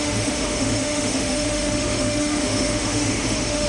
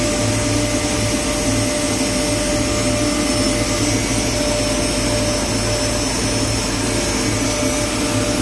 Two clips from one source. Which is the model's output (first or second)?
first